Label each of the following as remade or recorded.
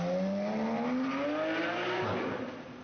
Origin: recorded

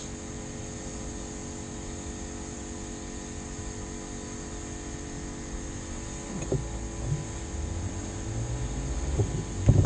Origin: recorded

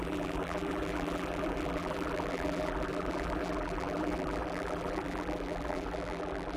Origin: remade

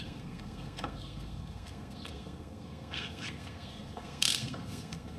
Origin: remade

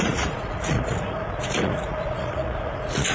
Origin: remade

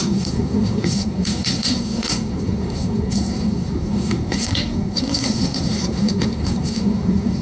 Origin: remade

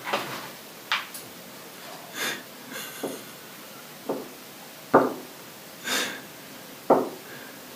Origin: recorded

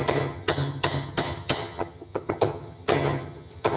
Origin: remade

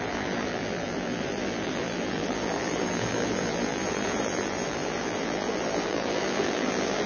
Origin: remade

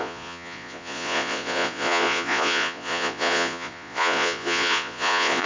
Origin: remade